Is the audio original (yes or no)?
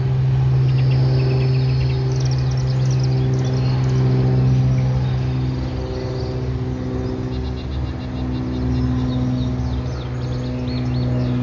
yes